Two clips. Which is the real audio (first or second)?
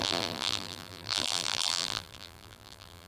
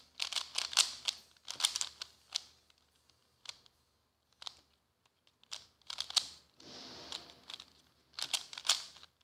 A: second